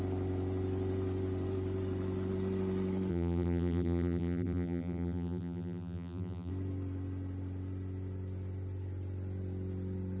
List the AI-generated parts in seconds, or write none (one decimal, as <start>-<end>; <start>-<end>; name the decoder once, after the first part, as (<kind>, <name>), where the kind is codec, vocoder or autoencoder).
3.1-6.5 (vocoder, BigVGAN v2)